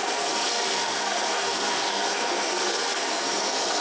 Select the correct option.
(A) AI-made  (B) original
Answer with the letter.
A